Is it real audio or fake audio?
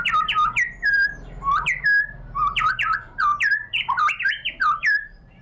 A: fake